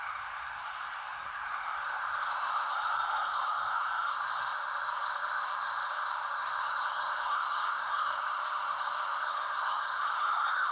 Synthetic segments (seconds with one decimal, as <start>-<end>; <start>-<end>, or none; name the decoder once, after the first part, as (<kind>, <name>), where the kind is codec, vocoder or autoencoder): 0.0-10.7 (codec, SNAC)